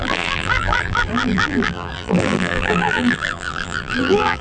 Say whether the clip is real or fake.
fake